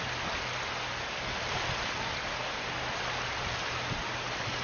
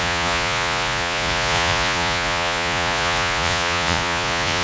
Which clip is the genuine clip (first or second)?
first